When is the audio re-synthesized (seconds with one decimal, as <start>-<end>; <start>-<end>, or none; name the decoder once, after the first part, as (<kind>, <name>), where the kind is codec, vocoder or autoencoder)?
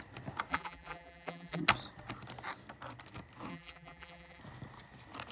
0.5-1.6 (vocoder, BigVGAN v2); 3.5-4.4